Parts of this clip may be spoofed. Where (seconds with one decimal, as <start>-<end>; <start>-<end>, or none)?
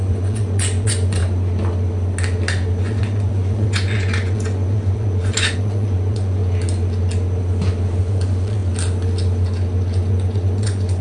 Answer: 0.0-1.2; 2.8-6.4; 8.0-8.6; 10.1-11.0